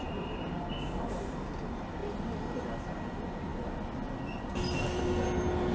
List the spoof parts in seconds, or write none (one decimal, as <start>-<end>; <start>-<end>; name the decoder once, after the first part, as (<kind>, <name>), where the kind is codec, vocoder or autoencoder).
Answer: none